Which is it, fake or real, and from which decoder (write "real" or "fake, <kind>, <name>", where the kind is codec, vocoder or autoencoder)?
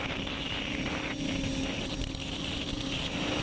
real